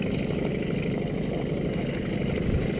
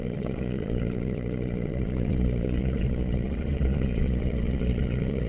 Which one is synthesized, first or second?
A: second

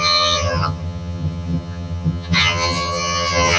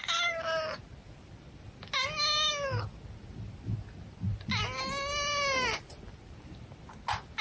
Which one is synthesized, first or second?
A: first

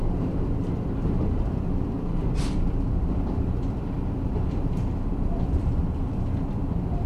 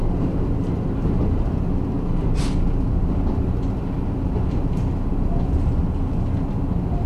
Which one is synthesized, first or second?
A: first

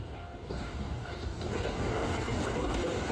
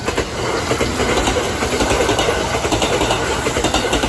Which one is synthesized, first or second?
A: first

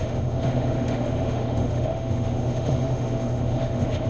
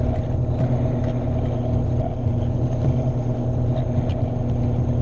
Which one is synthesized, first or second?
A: first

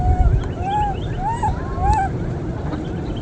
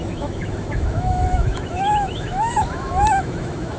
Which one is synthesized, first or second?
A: second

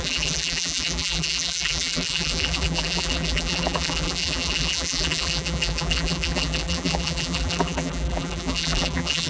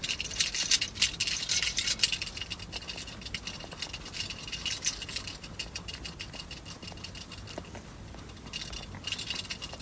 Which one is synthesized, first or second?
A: first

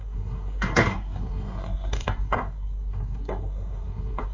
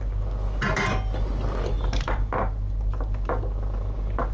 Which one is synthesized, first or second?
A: first